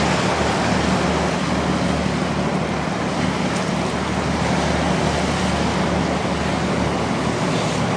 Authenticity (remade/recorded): recorded